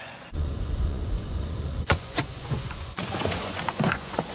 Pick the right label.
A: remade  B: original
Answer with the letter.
A